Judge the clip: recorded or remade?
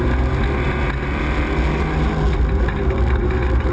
recorded